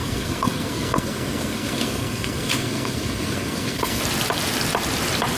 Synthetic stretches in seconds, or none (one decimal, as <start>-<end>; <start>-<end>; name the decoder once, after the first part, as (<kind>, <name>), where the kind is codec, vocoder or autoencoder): 0.0-4.0 (codec, SNAC)

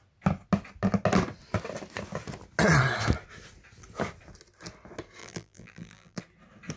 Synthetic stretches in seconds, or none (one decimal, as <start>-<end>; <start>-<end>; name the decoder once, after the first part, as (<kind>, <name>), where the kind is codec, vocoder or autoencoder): 5.2-6.2 (vocoder, BigVGAN v2)

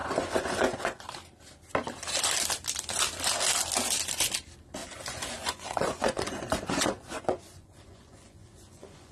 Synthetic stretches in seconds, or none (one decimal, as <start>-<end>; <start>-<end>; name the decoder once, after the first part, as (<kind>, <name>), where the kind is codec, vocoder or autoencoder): 0.0-1.0 (vocoder, Vocos); 4.8-9.1

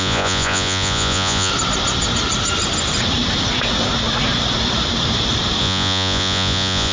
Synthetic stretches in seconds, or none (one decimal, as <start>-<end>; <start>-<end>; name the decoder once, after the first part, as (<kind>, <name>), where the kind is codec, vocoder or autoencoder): 0.0-1.5 (vocoder, Vocos); 5.6-6.9

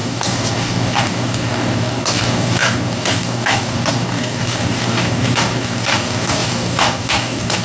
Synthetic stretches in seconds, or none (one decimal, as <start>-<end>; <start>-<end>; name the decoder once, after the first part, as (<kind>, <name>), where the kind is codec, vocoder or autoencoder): 0.0-7.6 (codec, DAC)